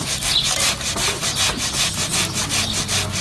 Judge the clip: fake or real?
real